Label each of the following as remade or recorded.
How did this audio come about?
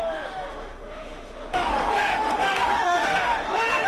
remade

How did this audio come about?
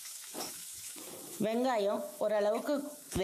remade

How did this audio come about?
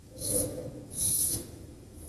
remade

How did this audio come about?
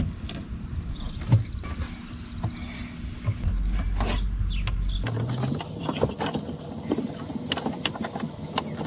recorded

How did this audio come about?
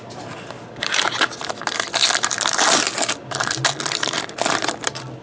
recorded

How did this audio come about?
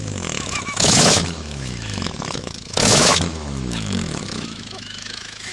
remade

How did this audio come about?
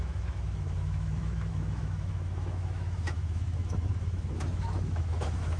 remade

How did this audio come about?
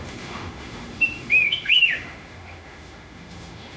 remade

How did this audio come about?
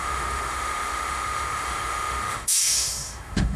remade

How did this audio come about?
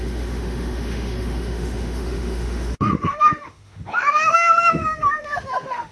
remade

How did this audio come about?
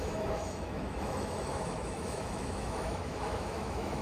remade